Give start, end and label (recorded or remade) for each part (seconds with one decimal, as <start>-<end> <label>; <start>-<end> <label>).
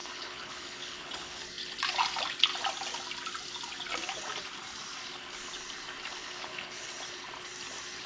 0.0-1.4 remade; 1.4-6.2 recorded; 6.2-7.0 remade; 7.0-8.1 recorded